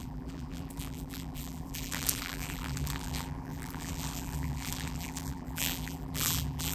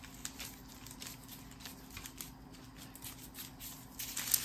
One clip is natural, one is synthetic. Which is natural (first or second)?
second